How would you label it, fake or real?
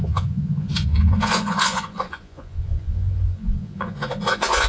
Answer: fake